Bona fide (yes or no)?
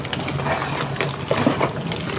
yes